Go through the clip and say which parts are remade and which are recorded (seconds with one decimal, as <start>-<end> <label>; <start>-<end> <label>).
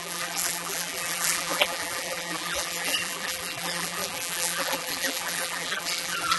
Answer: 0.0-6.4 remade